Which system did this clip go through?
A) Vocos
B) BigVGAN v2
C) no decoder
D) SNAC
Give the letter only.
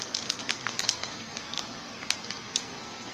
D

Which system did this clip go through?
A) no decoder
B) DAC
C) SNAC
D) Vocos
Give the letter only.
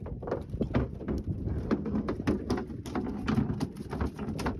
A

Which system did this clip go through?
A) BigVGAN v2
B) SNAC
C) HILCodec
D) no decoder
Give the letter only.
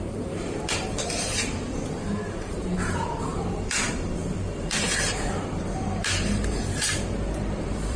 A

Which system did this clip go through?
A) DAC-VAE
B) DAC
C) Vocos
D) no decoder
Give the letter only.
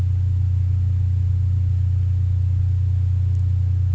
D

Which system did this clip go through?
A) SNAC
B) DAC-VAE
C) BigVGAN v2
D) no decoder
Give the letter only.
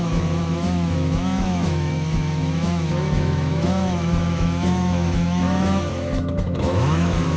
B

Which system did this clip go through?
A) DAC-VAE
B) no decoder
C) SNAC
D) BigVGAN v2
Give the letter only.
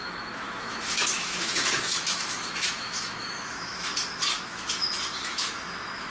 A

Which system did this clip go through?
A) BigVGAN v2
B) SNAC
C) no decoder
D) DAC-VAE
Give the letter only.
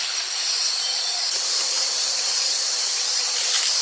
A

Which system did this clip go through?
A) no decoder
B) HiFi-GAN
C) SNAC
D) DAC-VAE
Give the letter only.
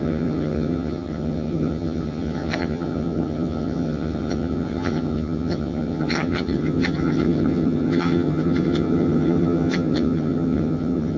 B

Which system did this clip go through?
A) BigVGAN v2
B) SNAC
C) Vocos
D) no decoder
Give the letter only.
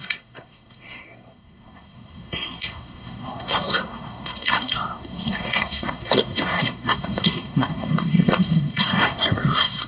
B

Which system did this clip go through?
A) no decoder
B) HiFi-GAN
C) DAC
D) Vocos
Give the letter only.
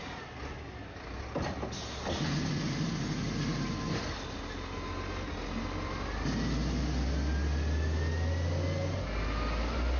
A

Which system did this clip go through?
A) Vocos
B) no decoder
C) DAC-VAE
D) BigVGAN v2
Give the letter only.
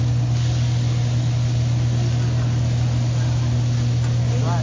B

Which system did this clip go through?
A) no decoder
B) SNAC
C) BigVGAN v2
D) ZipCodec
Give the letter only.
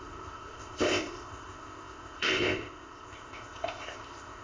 D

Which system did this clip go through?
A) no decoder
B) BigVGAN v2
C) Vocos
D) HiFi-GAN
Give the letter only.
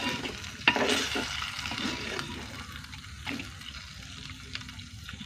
B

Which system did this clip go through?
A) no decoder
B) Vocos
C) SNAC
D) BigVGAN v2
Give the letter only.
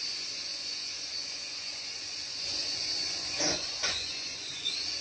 B